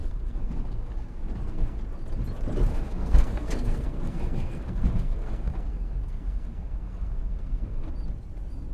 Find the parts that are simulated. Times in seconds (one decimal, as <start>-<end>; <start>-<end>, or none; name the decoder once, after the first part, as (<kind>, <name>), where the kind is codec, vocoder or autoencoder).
0.0-1.8 (codec, SNAC); 2.7-7.9